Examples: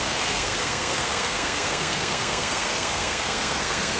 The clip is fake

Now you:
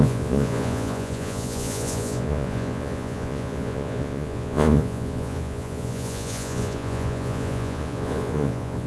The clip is fake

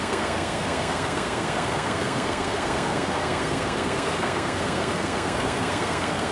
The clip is fake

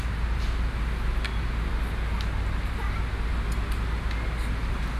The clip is real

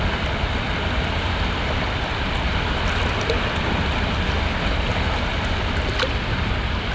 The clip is real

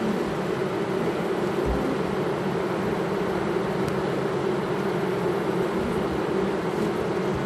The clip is real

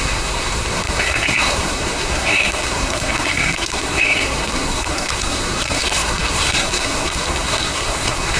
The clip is fake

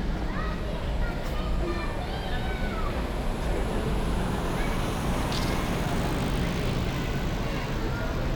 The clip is real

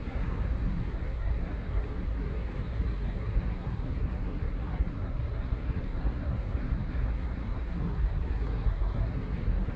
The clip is fake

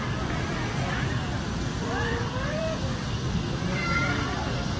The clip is fake